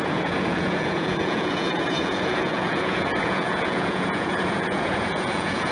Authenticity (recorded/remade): remade